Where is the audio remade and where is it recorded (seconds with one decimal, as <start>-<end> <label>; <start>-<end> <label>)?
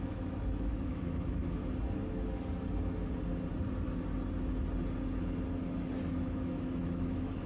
0.0-1.6 remade; 1.6-6.1 recorded; 6.1-7.5 remade